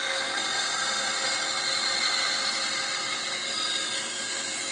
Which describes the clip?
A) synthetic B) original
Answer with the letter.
B